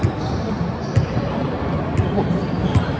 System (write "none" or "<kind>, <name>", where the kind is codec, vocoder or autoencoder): none